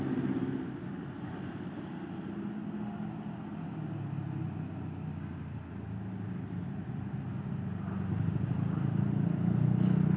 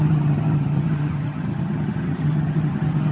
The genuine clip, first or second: first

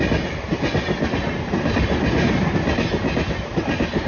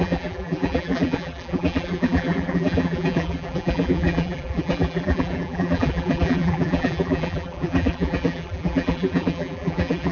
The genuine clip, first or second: first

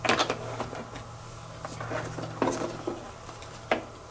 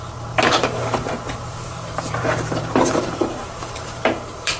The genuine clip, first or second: first